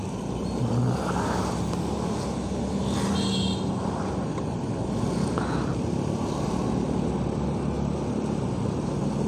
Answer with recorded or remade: recorded